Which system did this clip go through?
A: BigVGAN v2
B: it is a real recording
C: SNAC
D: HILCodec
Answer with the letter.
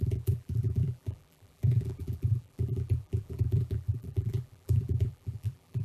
A